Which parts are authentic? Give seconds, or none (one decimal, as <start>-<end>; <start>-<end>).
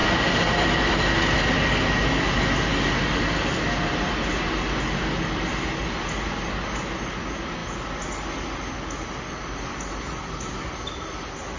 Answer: 0.0-11.6